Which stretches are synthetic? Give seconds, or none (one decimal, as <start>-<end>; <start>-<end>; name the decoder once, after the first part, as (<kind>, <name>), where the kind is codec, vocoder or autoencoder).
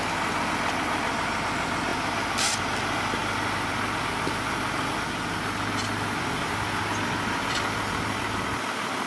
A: none